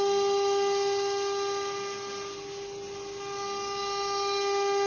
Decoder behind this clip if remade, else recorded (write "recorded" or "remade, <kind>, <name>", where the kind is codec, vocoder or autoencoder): recorded